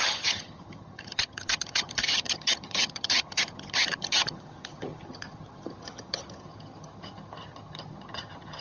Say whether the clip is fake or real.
fake